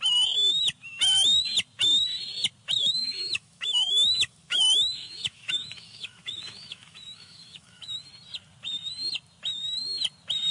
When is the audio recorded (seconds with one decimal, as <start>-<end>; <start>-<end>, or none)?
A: 0.0-3.0; 8.1-10.5